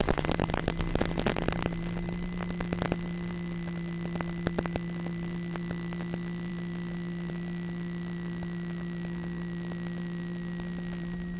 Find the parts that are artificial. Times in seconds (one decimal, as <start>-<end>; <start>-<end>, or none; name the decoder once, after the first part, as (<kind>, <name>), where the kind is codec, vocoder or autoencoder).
0.0-11.4 (vocoder, BigVGAN v2)